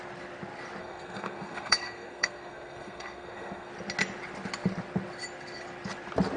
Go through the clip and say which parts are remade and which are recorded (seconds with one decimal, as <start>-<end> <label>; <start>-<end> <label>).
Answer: 0.0-0.8 recorded; 0.8-3.7 remade; 3.7-6.4 recorded